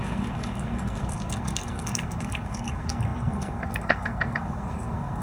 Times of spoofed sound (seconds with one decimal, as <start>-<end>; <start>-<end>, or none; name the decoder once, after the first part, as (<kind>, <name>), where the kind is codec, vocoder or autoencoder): 0.0-5.2 (codec, SNAC)